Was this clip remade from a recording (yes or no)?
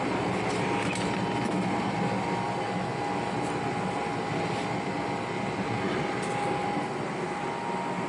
no